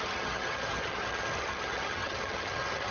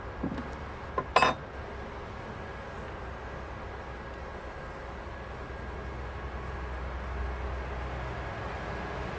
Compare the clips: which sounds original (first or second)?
second